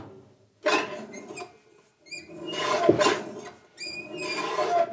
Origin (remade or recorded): recorded